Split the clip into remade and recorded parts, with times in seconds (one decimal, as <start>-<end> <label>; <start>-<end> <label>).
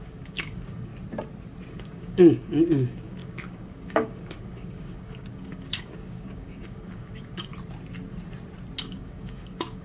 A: 0.0-0.9 remade; 0.9-1.7 recorded; 1.7-7.5 remade; 7.5-8.8 recorded; 8.8-9.8 remade